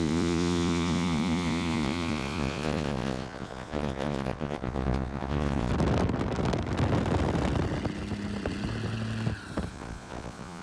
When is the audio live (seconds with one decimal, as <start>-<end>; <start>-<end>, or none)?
5.7-9.7